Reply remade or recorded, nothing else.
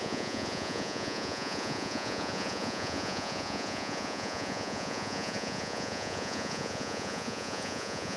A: remade